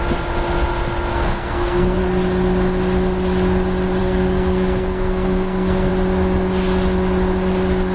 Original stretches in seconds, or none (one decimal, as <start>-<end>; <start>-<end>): 0.0-1.1; 2.0-4.0; 5.9-7.9